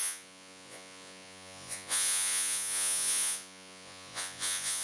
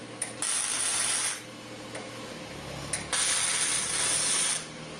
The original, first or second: second